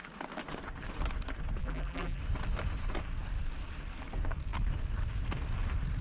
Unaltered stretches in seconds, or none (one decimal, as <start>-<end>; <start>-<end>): 0.0-1.6; 2.2-6.0